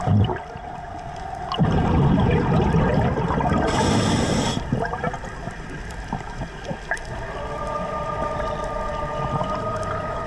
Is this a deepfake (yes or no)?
no